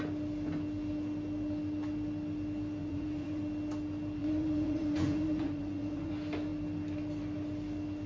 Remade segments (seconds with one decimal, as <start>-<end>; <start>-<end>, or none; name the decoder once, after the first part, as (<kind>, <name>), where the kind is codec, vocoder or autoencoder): 2.8-3.4 (vocoder, Vocos); 4.2-6.1